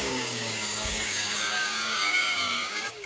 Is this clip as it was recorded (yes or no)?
no